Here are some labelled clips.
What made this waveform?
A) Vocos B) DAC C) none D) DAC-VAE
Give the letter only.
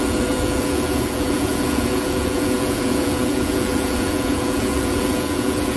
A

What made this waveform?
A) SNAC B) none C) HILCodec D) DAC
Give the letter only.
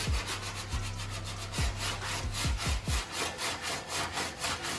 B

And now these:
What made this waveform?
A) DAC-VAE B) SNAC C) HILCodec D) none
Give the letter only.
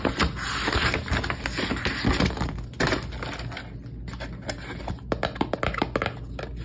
D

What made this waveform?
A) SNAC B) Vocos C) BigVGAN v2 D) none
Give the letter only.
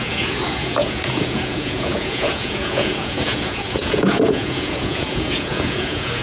B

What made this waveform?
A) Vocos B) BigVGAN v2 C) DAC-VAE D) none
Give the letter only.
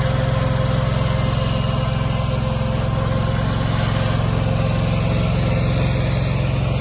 D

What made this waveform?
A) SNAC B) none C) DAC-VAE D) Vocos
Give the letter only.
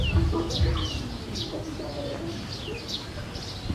B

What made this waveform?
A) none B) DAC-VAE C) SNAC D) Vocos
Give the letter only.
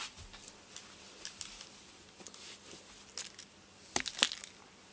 A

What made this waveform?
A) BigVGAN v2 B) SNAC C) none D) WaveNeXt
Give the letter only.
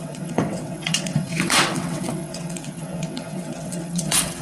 D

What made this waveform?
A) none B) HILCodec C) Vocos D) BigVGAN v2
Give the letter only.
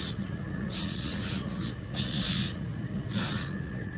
C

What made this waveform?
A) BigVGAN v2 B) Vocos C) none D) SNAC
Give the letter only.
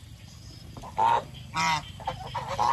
C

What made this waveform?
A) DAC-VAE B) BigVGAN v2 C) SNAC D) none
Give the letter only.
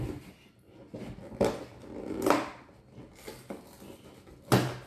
D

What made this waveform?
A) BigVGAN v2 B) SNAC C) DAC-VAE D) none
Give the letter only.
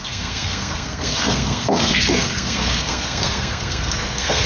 B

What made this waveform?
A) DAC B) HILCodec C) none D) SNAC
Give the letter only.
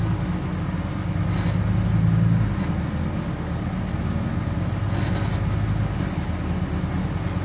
C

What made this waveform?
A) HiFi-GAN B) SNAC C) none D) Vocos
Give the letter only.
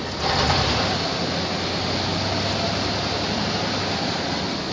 C